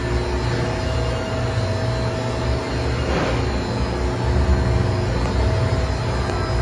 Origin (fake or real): real